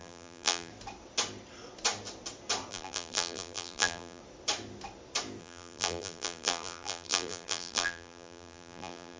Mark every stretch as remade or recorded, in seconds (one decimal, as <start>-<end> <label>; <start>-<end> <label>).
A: 0.0-0.7 remade; 0.7-2.7 recorded; 2.7-4.2 remade; 4.2-5.4 recorded; 5.4-9.2 remade